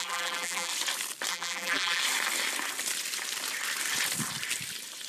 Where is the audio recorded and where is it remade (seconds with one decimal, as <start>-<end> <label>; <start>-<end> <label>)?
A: 0.0-0.7 remade; 0.7-1.3 recorded; 1.3-2.0 remade; 2.0-5.1 recorded